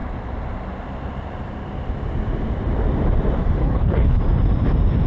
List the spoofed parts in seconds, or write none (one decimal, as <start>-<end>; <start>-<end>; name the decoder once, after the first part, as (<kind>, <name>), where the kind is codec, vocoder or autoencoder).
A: 3.6-4.2 (codec, HILCodec)